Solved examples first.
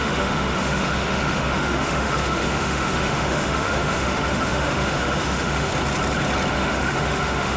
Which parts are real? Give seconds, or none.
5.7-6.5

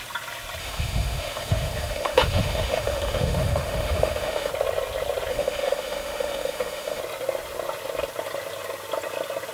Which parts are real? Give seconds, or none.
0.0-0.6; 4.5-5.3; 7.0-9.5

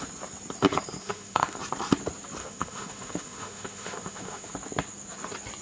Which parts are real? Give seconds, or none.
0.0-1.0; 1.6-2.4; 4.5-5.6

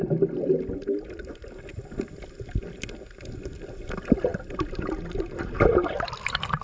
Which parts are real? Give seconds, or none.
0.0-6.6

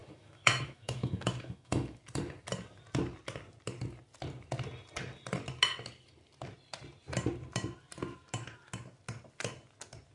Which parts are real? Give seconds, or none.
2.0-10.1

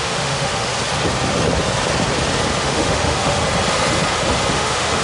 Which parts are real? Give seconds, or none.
0.7-2.6; 3.4-4.5

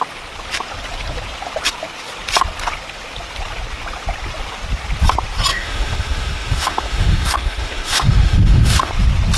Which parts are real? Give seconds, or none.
0.0-5.5; 8.9-9.4